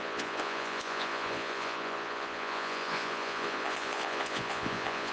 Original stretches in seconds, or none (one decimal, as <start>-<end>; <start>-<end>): none